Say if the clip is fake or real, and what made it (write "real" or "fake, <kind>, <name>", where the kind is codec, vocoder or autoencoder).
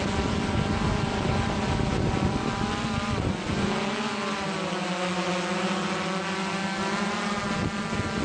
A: real